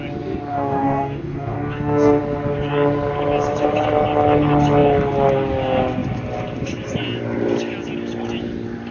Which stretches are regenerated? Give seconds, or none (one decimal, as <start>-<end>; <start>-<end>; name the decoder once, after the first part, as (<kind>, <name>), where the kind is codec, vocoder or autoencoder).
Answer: 0.5-2.2 (codec, DAC)